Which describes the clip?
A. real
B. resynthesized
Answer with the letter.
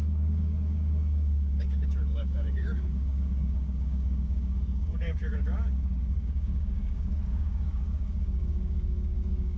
B